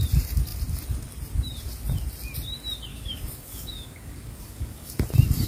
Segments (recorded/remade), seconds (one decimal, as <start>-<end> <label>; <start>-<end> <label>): 0.0-2.9 recorded; 2.9-4.9 remade; 4.9-5.5 recorded